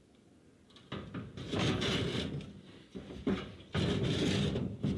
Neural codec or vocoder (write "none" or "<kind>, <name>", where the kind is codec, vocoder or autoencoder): none